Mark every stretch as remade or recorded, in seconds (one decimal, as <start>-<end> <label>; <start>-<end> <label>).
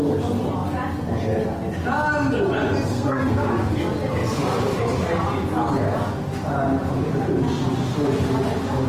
0.0-2.9 recorded; 2.9-3.5 remade; 3.5-8.9 recorded